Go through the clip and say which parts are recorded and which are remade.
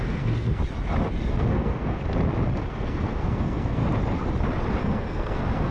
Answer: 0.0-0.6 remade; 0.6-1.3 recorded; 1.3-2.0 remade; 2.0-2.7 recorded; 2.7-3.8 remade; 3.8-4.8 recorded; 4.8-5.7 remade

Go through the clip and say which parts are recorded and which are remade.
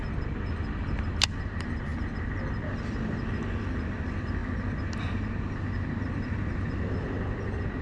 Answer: 0.0-7.8 recorded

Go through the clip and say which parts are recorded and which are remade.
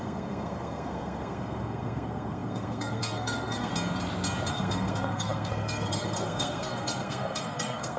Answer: 0.0-3.7 remade; 3.7-4.5 recorded; 4.5-8.0 remade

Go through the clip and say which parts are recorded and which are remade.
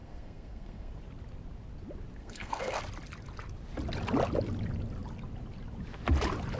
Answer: 0.0-0.9 remade; 0.9-2.2 recorded; 2.2-2.8 remade; 2.8-6.6 recorded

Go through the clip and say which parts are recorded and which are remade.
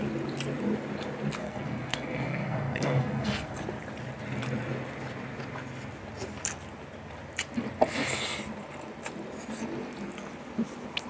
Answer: 0.0-1.4 recorded; 1.4-3.6 remade; 3.6-11.1 recorded